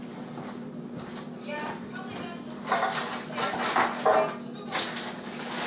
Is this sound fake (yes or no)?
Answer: no